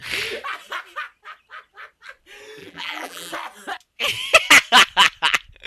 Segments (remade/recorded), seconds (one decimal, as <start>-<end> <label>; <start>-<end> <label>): 0.0-2.6 recorded; 2.6-3.3 remade; 3.3-5.7 recorded

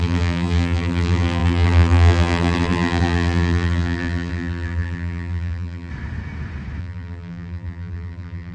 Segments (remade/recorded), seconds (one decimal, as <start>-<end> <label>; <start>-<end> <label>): 0.0-5.9 remade; 5.9-6.8 recorded; 6.8-8.5 remade